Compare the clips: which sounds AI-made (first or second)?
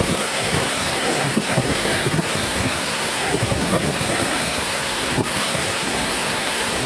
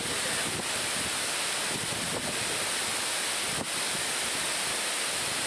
first